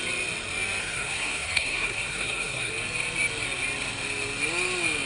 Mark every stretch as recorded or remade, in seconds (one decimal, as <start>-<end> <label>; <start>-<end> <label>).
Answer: 0.0-0.8 recorded; 0.8-2.7 remade; 2.7-5.1 recorded